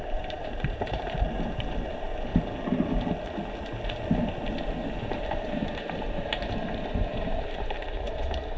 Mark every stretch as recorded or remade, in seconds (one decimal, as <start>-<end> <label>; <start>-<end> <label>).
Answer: 0.0-2.3 remade; 2.3-5.0 recorded; 5.0-8.6 remade